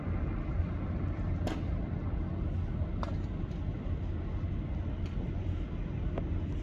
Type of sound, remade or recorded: recorded